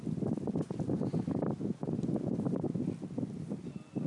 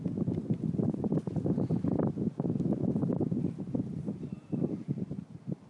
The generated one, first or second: second